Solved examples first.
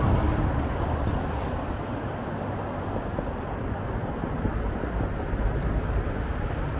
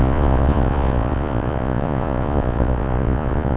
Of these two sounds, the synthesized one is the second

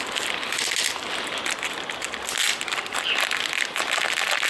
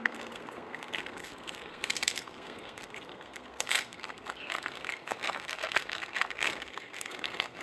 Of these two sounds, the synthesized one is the second